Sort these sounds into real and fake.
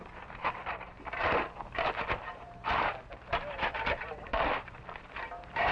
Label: fake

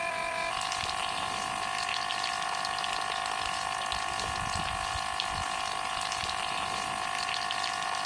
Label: real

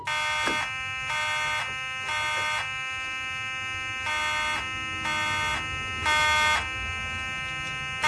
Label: real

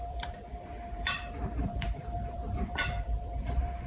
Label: fake